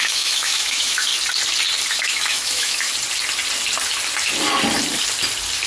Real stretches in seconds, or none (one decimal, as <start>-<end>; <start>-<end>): 1.1-1.9; 2.9-5.7